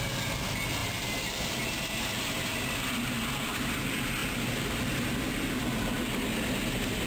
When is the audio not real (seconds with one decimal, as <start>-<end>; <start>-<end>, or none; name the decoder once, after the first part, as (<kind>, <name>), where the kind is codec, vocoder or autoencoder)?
0.8-3.8 (vocoder, BigVGAN v2)